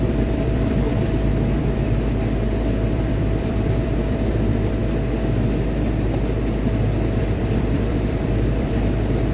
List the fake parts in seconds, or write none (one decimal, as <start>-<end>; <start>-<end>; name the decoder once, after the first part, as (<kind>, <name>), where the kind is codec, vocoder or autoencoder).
0.0-4.8 (vocoder, BigVGAN v2); 7.2-9.3